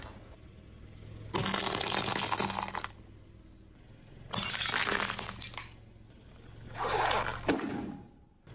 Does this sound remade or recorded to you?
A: recorded